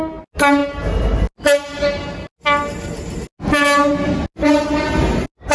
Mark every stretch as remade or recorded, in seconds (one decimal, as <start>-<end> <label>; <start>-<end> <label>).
0.0-5.5 recorded